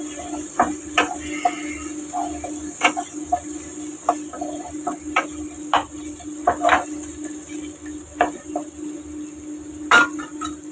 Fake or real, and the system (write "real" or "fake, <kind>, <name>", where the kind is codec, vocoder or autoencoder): real